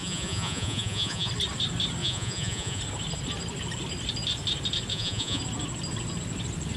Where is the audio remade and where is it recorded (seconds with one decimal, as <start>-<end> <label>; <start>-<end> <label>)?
0.0-1.3 remade; 1.3-2.0 recorded; 2.0-2.8 remade; 2.8-4.9 recorded; 4.9-5.4 remade; 5.4-6.8 recorded